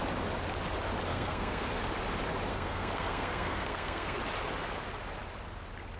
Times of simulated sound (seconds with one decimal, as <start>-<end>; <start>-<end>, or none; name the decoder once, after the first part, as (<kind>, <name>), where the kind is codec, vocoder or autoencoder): 1.1-1.8 (codec, SNAC); 2.5-4.2